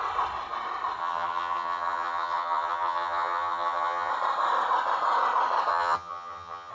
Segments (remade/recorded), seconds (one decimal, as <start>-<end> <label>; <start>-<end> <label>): 0.0-1.0 recorded; 1.0-4.1 remade; 4.1-5.7 recorded; 5.7-6.7 remade